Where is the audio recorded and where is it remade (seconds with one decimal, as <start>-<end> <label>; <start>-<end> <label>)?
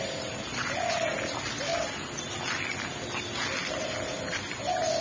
0.0-5.0 recorded